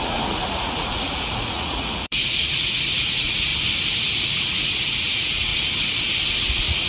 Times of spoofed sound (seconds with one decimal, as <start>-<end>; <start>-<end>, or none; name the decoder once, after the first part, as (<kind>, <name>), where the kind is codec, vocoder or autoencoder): 0.0-3.5 (vocoder, Vocos); 4.3-5.5; 6.5-6.9